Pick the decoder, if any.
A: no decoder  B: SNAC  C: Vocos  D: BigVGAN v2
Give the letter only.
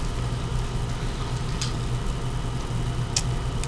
A